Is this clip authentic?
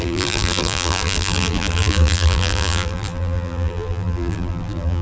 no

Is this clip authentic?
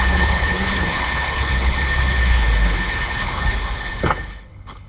no